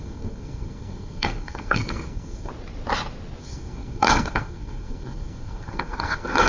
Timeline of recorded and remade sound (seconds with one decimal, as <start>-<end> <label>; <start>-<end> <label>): 0.0-2.5 remade; 2.5-3.4 recorded; 3.4-6.5 remade